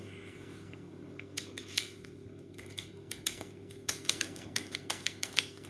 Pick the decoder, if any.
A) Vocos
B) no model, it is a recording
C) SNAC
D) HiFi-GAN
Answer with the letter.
C